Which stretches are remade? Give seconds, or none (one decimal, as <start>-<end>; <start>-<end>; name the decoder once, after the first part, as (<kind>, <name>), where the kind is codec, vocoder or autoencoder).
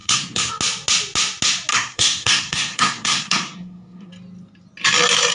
0.0-0.5 (codec, SNAC); 1.7-4.1